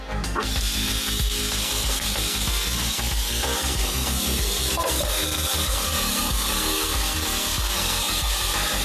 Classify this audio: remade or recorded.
remade